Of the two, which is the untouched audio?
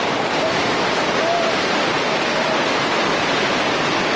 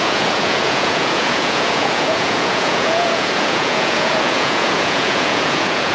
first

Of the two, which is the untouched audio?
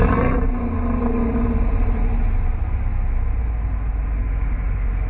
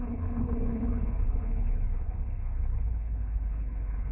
first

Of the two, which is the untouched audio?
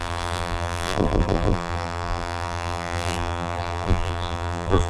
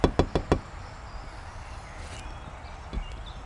second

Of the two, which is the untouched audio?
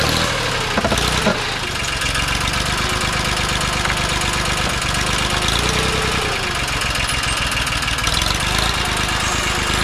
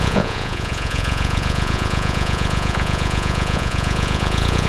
first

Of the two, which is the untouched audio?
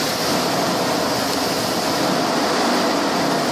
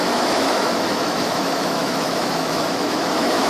first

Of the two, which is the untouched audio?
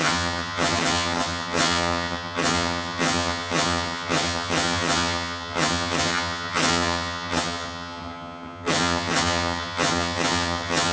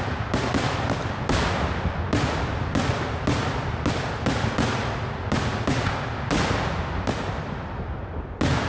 second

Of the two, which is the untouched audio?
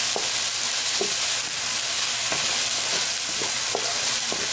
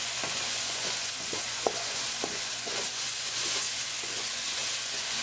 first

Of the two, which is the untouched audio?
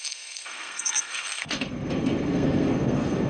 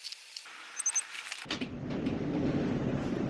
second